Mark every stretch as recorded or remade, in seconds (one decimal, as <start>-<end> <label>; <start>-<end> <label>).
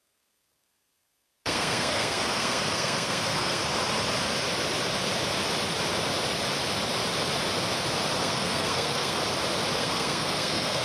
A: 0.0-3.6 remade; 3.6-8.2 recorded; 8.2-9.2 remade; 9.2-9.8 recorded; 9.8-10.8 remade